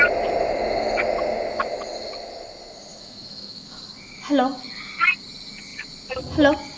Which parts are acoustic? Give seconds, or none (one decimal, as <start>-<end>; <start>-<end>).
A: 0.0-2.9; 3.8-6.8